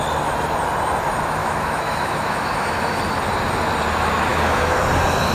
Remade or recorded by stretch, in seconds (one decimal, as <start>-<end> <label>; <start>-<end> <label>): 0.0-1.4 recorded; 1.4-3.0 remade; 3.0-4.3 recorded; 4.3-4.8 remade; 4.8-5.3 recorded